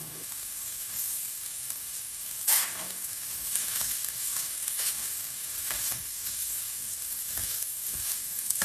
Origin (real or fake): fake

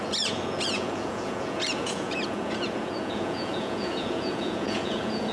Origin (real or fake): fake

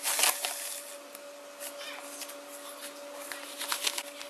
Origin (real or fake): real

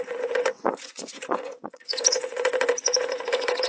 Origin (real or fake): fake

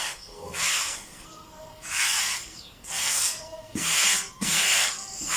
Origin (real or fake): fake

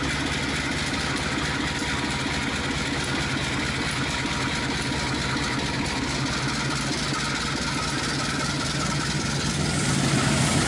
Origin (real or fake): real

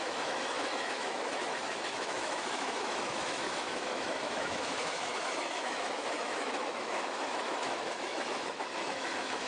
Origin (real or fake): fake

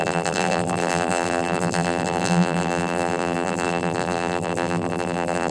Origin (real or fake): fake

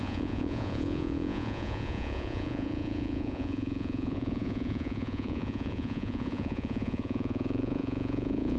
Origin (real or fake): fake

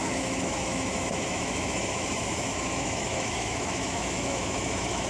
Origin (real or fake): fake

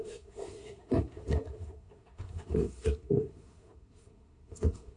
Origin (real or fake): fake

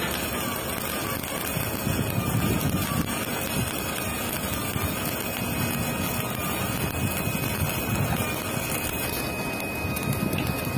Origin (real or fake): real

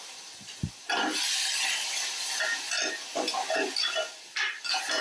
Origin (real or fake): real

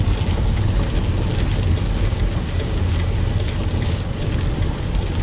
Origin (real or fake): real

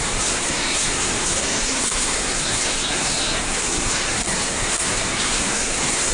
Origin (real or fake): fake